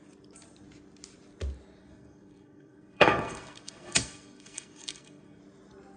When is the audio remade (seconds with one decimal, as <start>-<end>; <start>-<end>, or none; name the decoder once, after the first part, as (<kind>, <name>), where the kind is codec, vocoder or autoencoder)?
1.8-5.4 (codec, SNAC)